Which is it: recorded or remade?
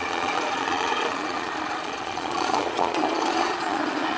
remade